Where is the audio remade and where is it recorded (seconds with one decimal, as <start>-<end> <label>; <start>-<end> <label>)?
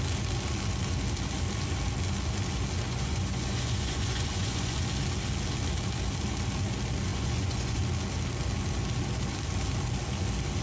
0.0-2.9 recorded; 2.9-4.8 remade; 4.8-7.1 recorded; 7.1-7.8 remade; 7.8-10.6 recorded